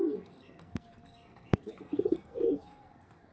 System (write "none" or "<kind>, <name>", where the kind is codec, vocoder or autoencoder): codec, SNAC